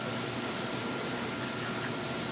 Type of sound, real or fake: real